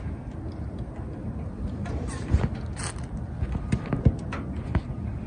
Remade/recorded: recorded